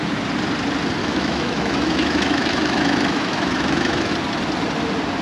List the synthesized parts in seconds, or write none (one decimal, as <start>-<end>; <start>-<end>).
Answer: 1.0-4.1